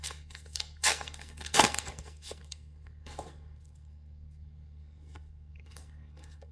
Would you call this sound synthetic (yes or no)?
yes